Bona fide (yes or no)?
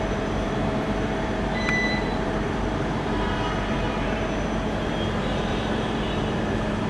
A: no